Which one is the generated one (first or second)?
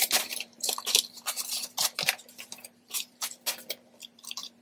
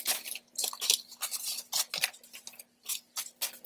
first